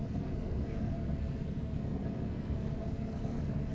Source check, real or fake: fake